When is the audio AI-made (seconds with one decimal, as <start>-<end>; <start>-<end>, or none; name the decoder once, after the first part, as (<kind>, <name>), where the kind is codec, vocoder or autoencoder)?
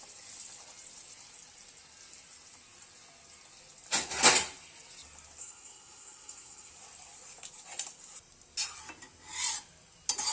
5.4-6.7 (codec, SNAC)